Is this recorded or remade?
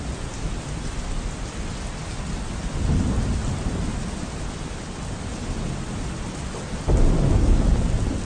recorded